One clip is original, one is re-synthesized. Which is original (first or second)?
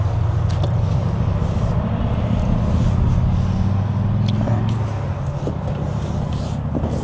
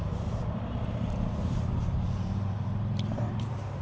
first